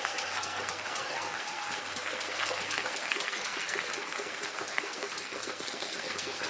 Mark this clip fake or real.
fake